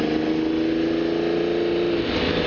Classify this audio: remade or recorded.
recorded